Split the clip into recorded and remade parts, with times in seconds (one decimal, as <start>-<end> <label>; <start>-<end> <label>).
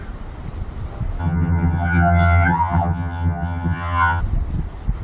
0.0-1.2 recorded; 1.2-4.2 remade; 4.2-5.0 recorded